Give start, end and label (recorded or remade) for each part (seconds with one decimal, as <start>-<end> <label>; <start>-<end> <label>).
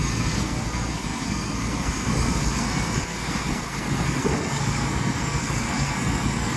0.0-6.6 remade